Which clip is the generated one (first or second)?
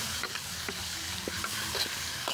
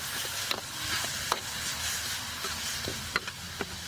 first